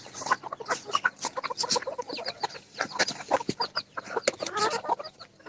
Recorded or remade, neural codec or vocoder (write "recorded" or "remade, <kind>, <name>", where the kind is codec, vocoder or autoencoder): recorded